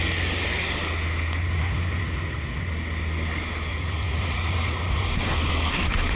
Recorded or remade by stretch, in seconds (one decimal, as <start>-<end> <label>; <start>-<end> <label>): 0.0-1.4 recorded; 1.4-2.7 remade; 2.7-3.7 recorded; 3.7-5.1 remade; 5.1-6.2 recorded